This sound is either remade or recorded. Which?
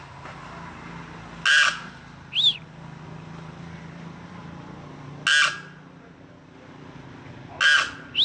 recorded